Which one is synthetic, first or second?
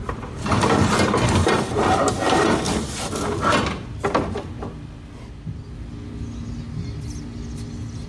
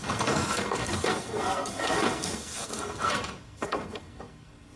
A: second